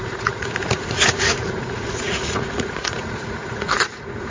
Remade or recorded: remade